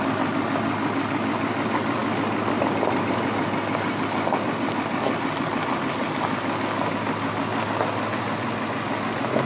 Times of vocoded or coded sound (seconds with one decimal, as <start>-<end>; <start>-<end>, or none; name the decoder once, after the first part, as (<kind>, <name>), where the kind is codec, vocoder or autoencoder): none